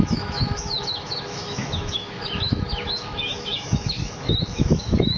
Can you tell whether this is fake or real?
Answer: fake